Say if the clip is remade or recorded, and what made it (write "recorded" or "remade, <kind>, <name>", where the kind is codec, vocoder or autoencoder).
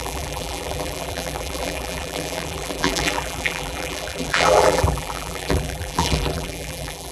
remade, vocoder, BigVGAN v2